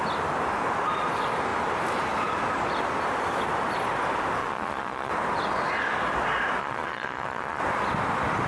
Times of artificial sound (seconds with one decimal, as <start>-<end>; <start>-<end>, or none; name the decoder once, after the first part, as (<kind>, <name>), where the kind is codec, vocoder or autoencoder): 4.4-5.1 (vocoder, Vocos); 6.6-7.6